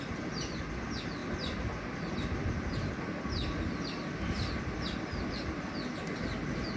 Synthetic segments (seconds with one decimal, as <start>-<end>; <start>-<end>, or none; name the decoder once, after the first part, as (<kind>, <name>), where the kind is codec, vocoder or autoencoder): none